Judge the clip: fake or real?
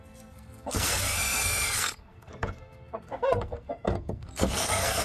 fake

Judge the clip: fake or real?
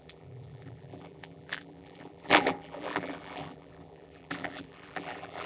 fake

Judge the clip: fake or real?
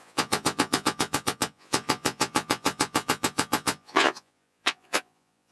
fake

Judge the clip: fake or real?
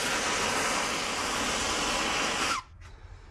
real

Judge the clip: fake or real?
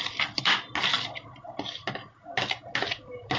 real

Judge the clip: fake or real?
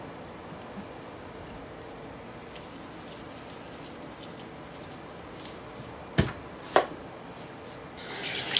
real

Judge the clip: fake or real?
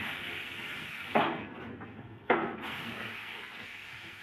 fake